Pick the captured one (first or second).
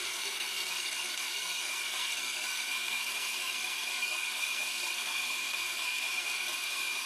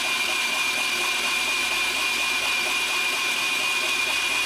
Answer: second